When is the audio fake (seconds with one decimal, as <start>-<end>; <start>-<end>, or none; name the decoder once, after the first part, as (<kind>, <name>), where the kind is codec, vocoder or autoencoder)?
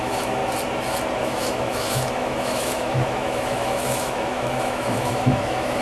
0.0-0.4 (autoencoder, DAC-VAE); 1.2-5.8